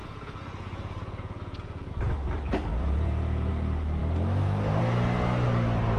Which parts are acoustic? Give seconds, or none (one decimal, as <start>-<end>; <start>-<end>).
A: 1.9-2.7; 3.5-6.0